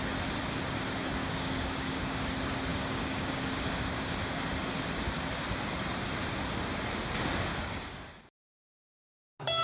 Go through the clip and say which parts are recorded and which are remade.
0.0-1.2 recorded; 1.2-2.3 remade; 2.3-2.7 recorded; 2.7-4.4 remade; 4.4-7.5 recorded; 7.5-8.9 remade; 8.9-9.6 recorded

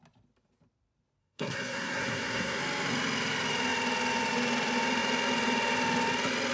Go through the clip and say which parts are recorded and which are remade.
0.0-1.2 recorded; 1.2-2.6 remade; 2.6-6.5 recorded

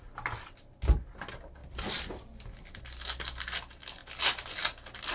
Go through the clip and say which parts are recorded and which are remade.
0.0-5.1 recorded